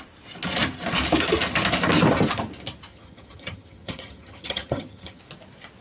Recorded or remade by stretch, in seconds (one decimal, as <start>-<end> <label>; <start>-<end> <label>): 0.0-2.9 recorded; 2.9-5.2 remade; 5.2-5.8 recorded